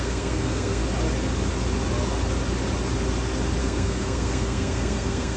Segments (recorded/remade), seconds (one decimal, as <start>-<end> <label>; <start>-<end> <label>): 0.0-0.8 remade; 0.8-3.6 recorded; 3.6-5.4 remade